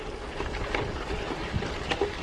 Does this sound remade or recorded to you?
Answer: recorded